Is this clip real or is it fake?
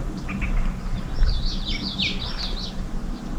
real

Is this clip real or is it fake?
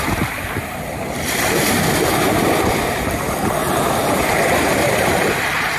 fake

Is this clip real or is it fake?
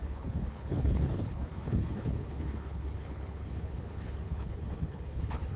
fake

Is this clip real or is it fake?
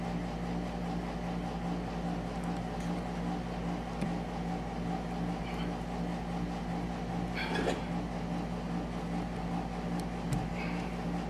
real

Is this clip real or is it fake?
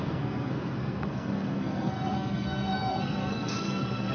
fake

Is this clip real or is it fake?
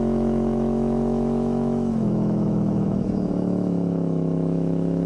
fake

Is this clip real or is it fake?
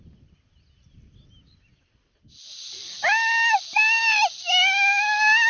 real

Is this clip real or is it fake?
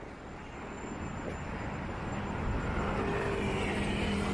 real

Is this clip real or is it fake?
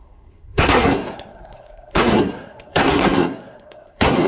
fake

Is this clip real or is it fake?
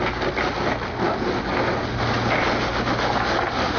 real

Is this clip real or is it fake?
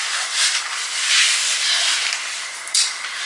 real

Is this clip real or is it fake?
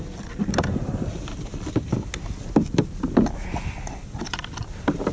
real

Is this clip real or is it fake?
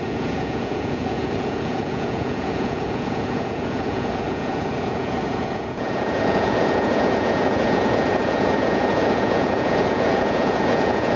fake